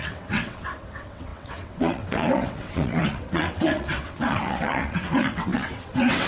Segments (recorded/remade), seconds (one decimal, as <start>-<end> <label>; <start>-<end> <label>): 0.0-6.3 remade